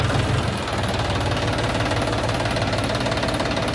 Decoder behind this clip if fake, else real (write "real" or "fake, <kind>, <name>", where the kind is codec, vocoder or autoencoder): real